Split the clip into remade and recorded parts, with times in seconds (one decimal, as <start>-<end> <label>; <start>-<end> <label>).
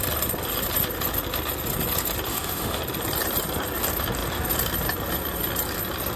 0.0-2.3 recorded; 2.3-2.8 remade; 2.8-6.2 recorded